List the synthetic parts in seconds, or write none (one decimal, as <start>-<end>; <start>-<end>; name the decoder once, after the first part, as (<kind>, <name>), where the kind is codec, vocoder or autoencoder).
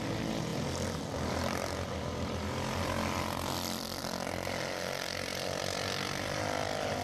5.3-6.4 (vocoder, BigVGAN v2)